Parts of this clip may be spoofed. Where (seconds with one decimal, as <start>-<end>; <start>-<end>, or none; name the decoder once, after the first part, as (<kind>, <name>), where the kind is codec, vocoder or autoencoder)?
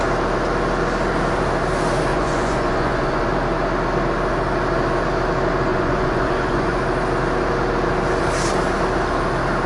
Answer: 2.1-3.2 (vocoder, Vocos); 5.7-6.8